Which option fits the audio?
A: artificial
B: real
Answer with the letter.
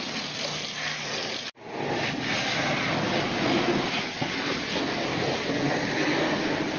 B